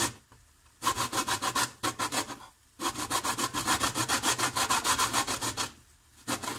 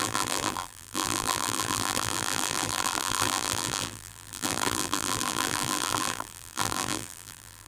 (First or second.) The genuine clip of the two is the first